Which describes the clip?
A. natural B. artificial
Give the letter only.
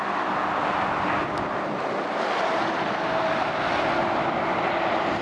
A